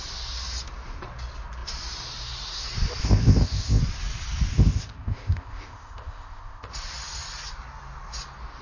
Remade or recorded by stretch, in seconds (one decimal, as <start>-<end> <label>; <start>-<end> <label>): 0.0-3.0 recorded; 3.0-3.8 remade; 3.8-4.5 recorded; 4.5-6.7 remade; 6.7-8.6 recorded